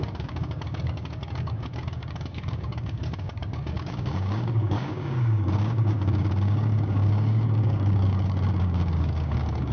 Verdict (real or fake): fake